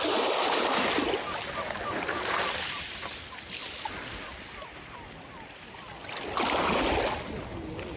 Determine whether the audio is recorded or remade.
recorded